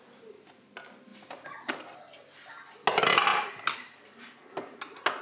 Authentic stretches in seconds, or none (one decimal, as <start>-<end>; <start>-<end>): 0.0-5.2